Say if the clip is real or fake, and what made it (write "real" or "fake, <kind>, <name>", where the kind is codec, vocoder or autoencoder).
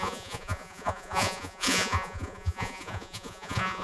fake, vocoder, Vocos